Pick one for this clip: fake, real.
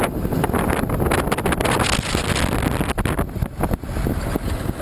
real